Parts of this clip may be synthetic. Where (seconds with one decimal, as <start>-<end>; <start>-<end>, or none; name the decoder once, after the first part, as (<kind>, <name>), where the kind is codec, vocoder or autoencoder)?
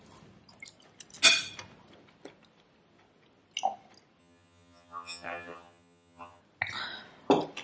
4.2-6.4 (vocoder, HiFi-GAN)